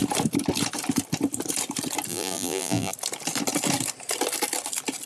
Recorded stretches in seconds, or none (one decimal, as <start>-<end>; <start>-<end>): 0.0-2.1; 2.9-5.1